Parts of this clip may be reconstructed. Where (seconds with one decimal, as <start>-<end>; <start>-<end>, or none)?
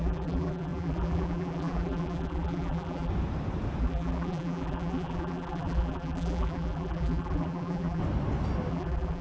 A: 0.0-3.1; 3.8-8.0; 8.7-9.2